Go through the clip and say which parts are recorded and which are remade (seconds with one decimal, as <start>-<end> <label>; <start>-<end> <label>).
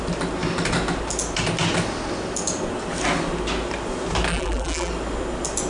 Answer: 0.0-4.3 recorded; 4.3-4.9 remade; 4.9-5.7 recorded